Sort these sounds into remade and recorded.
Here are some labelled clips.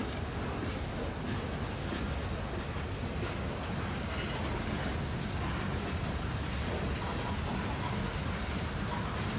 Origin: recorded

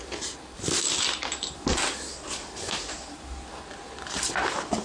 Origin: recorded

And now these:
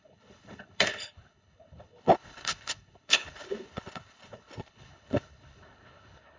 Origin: remade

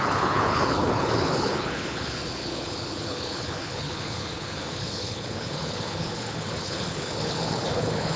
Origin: remade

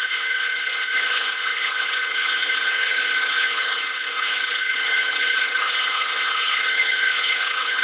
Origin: remade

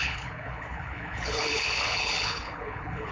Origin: remade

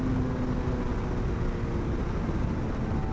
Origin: recorded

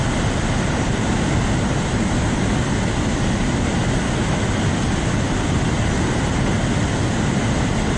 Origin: recorded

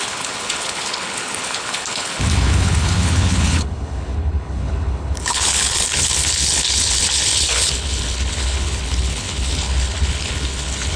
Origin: remade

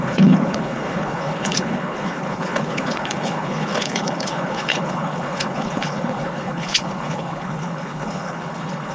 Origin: remade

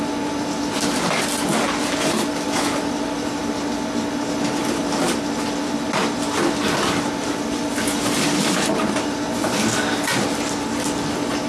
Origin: recorded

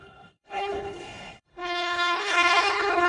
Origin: remade